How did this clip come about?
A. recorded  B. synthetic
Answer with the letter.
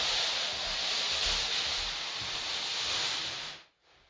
A